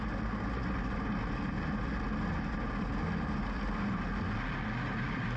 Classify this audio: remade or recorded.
recorded